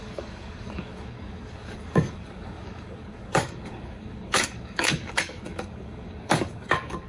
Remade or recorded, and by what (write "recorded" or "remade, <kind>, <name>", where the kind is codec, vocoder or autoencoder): remade, codec, DAC